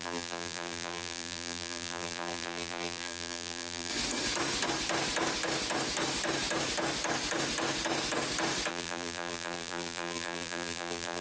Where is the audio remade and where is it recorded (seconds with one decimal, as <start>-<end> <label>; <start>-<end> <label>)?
0.0-3.9 remade; 3.9-8.7 recorded; 8.7-11.2 remade

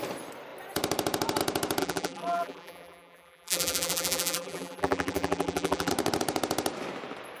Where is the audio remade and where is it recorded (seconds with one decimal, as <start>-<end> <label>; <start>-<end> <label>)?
0.0-1.8 recorded; 1.8-5.9 remade; 5.9-7.4 recorded

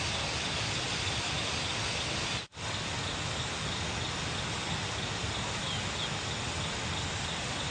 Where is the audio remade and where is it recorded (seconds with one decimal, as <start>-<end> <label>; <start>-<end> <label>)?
0.0-7.7 recorded

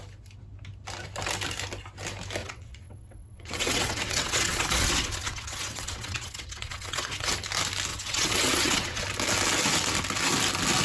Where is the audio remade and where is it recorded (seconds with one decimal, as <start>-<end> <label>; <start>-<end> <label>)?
0.0-2.4 recorded; 2.4-7.3 remade; 7.3-7.9 recorded; 7.9-9.0 remade; 9.0-10.8 recorded

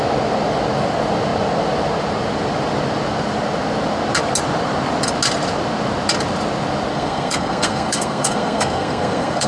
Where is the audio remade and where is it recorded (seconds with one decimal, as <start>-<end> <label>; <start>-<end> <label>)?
0.0-6.9 recorded; 6.9-9.5 remade

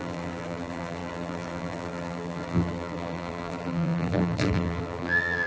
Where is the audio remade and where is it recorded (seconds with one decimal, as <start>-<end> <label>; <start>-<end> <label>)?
0.0-5.5 remade

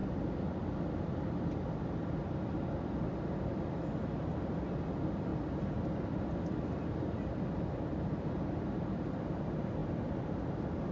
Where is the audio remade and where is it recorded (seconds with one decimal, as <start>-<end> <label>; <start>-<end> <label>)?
0.0-10.9 recorded

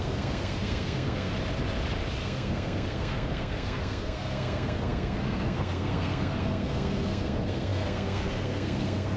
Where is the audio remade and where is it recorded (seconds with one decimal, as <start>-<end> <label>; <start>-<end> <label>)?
0.0-1.3 remade; 1.3-2.2 recorded; 2.2-9.2 remade